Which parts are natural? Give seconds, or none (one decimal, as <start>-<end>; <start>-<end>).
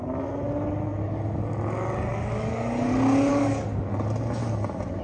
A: 0.0-2.1; 2.9-3.3; 3.9-5.0